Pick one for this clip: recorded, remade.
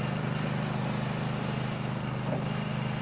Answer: recorded